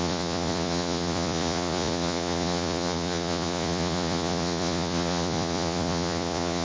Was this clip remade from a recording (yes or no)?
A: yes